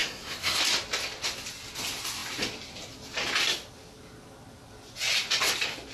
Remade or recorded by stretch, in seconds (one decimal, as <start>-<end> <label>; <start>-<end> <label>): 0.0-0.6 remade; 0.6-5.9 recorded